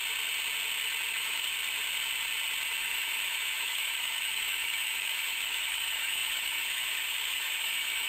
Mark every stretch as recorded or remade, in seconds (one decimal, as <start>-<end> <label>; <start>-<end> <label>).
0.0-1.1 recorded; 1.1-1.5 remade; 1.5-2.8 recorded; 2.8-8.1 remade

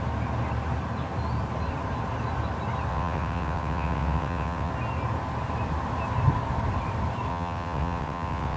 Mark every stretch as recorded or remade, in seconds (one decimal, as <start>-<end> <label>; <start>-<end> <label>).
0.0-2.9 recorded; 2.9-4.7 remade; 4.7-7.3 recorded; 7.3-8.6 remade

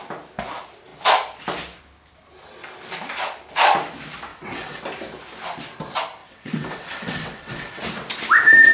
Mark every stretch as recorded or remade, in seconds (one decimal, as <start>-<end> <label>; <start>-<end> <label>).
0.0-4.3 recorded; 4.3-4.8 remade; 4.8-6.2 recorded; 6.2-7.8 remade; 7.8-8.7 recorded

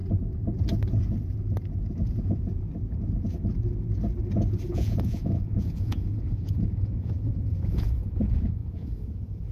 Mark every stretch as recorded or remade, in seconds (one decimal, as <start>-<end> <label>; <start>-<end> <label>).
0.0-2.2 recorded; 2.2-2.7 remade; 2.7-4.7 recorded; 4.7-9.5 remade

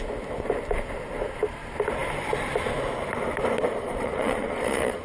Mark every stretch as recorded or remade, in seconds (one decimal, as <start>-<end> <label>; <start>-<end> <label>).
0.0-3.7 recorded; 3.7-5.0 remade

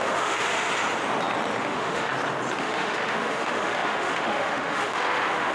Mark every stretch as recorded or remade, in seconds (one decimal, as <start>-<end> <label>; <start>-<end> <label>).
0.0-0.7 remade; 0.7-1.6 recorded; 1.6-2.1 remade; 2.1-2.6 recorded; 2.6-5.5 remade

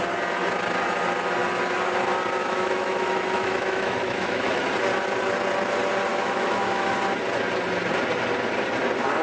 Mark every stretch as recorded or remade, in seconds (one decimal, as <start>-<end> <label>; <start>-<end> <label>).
0.0-2.4 recorded; 2.4-4.7 remade; 4.7-6.1 recorded; 6.1-6.9 remade; 6.9-9.2 recorded